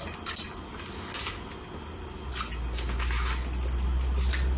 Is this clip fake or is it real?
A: real